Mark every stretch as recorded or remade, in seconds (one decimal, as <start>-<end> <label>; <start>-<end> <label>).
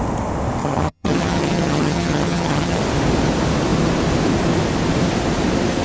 0.0-0.6 recorded; 0.6-2.8 remade; 2.8-5.8 recorded